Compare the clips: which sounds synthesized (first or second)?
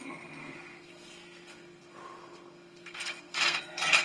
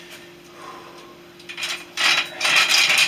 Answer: first